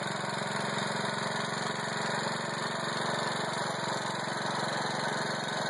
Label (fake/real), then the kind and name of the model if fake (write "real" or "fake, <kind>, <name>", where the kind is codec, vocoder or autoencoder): real